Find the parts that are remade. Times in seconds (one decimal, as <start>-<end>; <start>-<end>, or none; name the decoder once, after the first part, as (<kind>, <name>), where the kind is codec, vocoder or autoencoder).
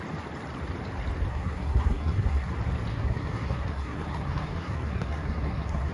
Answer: 1.3-2.5 (codec, SNAC); 2.9-5.9